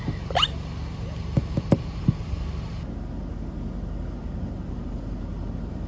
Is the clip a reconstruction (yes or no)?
no